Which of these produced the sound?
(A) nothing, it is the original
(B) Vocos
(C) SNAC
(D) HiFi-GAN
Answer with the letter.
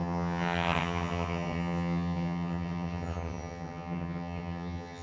D